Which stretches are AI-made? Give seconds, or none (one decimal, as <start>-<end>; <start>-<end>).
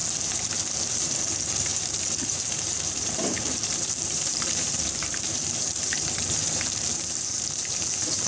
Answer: 0.9-8.3